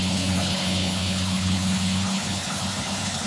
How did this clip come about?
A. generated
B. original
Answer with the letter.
A